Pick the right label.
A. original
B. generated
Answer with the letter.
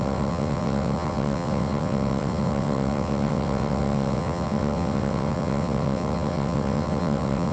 B